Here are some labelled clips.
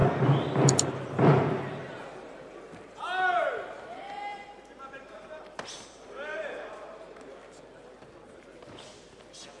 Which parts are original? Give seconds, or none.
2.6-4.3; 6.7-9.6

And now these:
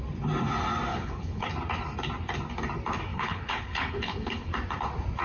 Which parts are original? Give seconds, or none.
0.0-0.9; 1.5-3.1; 4.5-5.2

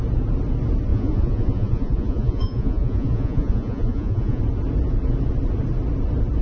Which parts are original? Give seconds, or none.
0.0-0.9; 4.4-6.4

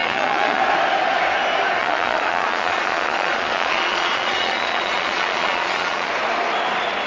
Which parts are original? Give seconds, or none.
0.6-1.8; 6.1-7.1

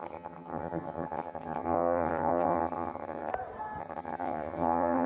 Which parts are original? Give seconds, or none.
3.3-3.8

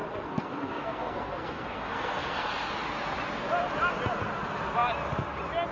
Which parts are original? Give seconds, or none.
2.5-5.7

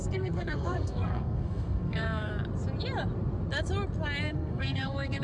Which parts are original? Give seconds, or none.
2.3-4.2

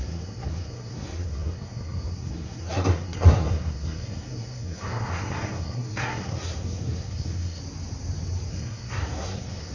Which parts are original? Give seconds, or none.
7.6-8.5